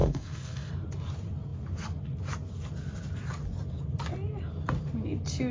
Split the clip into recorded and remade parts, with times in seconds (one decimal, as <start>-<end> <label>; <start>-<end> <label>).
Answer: 0.0-0.7 remade; 0.7-5.5 recorded